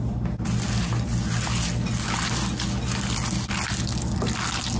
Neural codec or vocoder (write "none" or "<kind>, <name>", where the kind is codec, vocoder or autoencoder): none